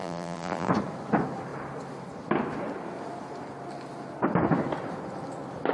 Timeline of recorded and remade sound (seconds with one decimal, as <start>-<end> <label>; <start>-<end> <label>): 0.0-0.7 remade; 0.7-5.7 recorded